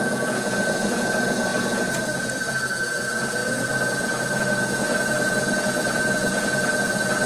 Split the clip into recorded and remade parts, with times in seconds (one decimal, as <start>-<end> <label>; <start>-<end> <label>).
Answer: 0.0-7.3 remade